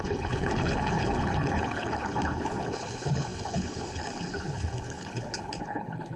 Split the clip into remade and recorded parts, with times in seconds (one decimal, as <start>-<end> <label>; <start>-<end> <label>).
0.0-6.2 remade